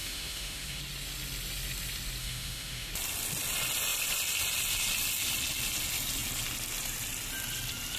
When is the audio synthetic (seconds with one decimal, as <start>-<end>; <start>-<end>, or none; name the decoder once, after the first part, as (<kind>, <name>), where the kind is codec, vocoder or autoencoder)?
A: 0.0-0.8 (autoencoder, DAC-VAE); 2.2-2.9